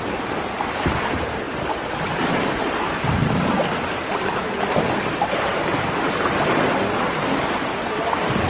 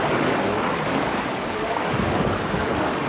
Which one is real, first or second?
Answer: first